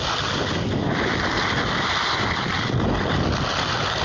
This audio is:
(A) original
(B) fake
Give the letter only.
A